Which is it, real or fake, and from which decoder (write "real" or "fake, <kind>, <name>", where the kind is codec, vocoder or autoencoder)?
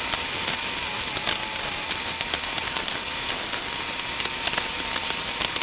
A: real